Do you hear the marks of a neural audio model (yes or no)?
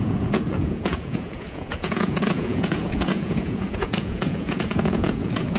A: yes